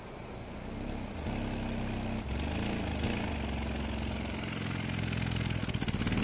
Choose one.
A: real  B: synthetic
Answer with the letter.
A